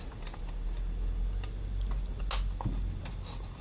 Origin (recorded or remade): recorded